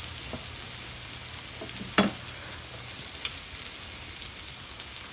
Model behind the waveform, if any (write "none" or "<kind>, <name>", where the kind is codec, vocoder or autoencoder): none